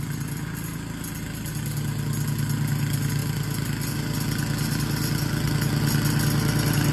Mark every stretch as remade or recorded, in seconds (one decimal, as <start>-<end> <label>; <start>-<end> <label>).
0.0-6.9 recorded